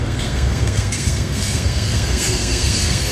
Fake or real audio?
fake